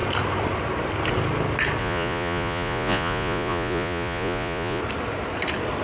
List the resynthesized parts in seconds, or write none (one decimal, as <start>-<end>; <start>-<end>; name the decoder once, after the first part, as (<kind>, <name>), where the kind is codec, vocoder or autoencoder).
1.8-4.8 (vocoder, Vocos)

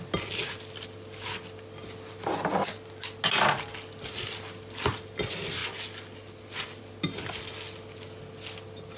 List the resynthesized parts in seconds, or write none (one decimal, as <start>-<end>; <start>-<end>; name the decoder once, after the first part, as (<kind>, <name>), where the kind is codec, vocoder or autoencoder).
none

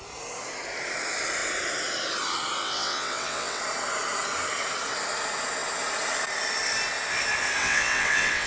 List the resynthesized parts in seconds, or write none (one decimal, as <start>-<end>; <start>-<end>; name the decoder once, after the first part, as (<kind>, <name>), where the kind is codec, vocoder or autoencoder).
2.6-3.6 (vocoder, WaveNeXt); 7.6-8.5

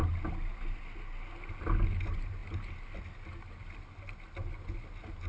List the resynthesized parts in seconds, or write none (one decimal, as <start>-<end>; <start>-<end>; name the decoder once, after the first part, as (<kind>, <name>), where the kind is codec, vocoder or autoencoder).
none

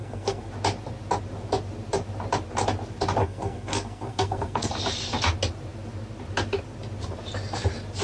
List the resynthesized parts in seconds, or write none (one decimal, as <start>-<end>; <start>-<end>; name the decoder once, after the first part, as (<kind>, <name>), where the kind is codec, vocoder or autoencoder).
0.0-0.5 (codec, SNAC); 3.2-4.7